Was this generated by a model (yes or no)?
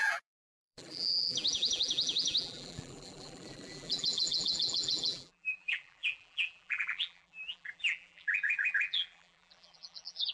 yes